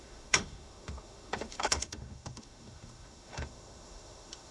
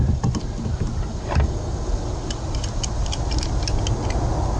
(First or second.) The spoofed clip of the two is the first